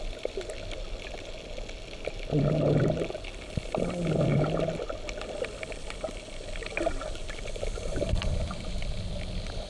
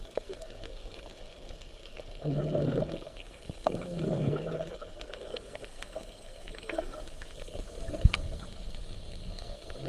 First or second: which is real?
first